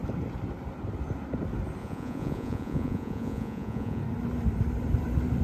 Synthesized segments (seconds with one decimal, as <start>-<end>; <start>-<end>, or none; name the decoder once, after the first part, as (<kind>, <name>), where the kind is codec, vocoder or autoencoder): 1.8-4.0 (vocoder, Vocos)